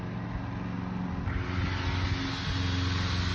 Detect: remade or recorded recorded